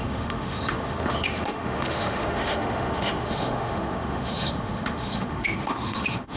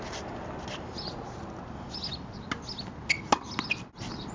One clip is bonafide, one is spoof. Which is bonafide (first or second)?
second